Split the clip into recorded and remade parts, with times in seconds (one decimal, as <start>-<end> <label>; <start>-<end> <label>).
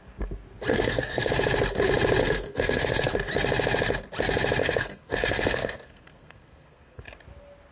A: 0.0-0.7 recorded; 0.7-1.3 remade; 1.3-2.2 recorded; 2.2-3.1 remade; 3.1-4.6 recorded; 4.6-7.0 remade; 7.0-7.7 recorded